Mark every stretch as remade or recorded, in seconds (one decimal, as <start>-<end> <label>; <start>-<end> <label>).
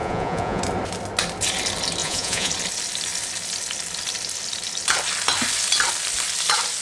0.0-0.6 remade; 0.6-2.0 recorded; 2.0-2.5 remade; 2.5-6.8 recorded